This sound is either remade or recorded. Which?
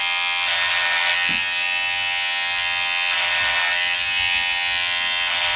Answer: recorded